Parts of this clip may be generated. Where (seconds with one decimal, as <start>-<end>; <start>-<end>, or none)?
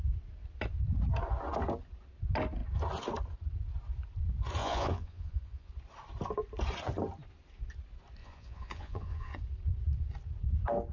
4.6-5.7; 8.2-9.4